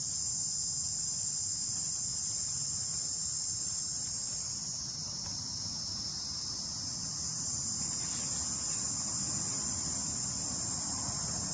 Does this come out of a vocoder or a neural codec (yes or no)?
no